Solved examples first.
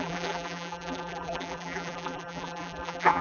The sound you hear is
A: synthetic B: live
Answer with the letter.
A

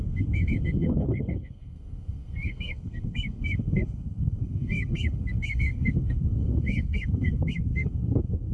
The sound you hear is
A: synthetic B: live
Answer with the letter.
A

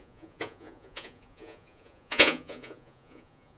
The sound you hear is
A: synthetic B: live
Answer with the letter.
A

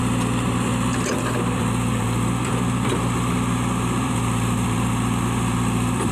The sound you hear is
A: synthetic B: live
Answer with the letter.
A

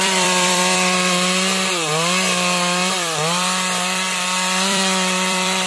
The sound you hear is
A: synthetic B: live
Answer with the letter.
A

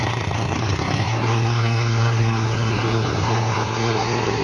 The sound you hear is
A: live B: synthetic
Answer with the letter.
B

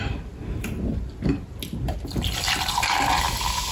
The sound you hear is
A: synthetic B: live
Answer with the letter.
B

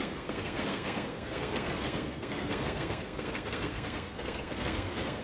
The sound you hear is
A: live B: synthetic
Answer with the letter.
B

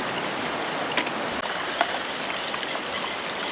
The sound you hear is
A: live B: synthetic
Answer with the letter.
A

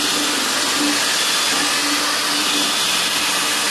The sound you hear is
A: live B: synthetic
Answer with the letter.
A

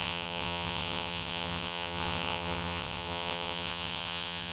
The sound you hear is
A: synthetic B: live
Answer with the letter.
A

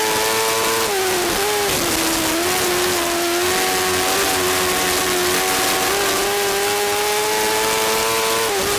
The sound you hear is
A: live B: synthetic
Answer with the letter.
A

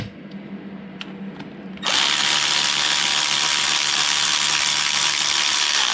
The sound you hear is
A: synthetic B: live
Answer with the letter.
B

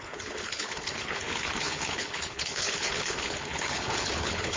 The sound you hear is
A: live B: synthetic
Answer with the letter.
B